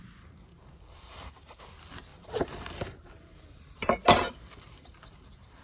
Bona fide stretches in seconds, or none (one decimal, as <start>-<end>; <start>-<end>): 0.0-0.5; 1.6-2.1